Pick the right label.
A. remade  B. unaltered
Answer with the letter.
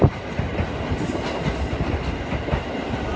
B